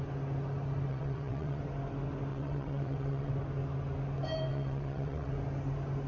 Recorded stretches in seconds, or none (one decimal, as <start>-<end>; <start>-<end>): 0.0-0.9; 1.6-2.3; 3.3-4.5; 5.3-6.1